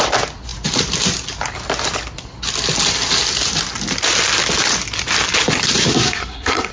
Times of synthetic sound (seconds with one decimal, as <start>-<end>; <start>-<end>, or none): 5.9-6.7